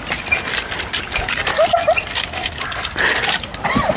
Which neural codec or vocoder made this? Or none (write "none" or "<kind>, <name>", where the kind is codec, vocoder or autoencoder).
none